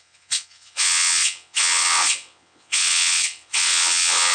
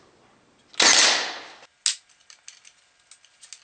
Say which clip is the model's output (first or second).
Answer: first